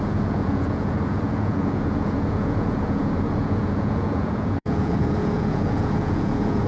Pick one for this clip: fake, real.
fake